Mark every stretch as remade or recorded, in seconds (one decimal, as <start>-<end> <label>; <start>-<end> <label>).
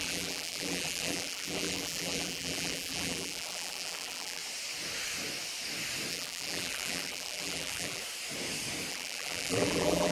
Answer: 0.0-4.4 remade; 4.4-6.1 recorded; 6.1-8.0 remade; 8.0-8.9 recorded; 8.9-10.1 remade